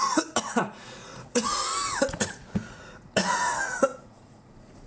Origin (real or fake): fake